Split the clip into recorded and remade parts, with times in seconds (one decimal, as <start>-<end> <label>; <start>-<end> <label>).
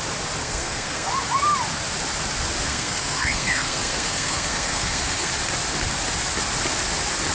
0.0-0.4 recorded; 0.4-1.1 remade; 1.1-2.7 recorded; 2.7-5.3 remade; 5.3-7.3 recorded